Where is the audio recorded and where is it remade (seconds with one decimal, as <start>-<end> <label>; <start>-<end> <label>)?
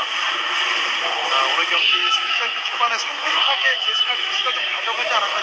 0.0-1.8 recorded; 1.8-5.0 remade; 5.0-5.4 recorded